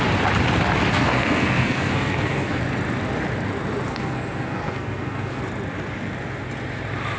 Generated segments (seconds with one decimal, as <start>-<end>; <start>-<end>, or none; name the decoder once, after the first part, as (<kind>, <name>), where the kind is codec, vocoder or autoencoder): 0.9-2.6 (codec, SNAC); 3.9-5.4

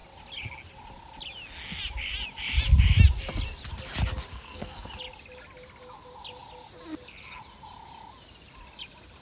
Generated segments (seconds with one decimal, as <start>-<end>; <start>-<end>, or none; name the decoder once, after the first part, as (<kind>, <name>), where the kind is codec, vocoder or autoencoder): 4.3-4.9 (codec, SNAC)

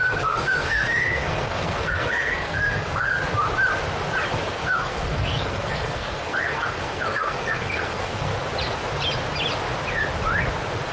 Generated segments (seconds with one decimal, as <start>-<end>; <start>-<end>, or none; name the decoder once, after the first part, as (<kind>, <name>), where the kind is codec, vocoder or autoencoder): 0.0-3.2 (codec, SNAC); 4.5-8.3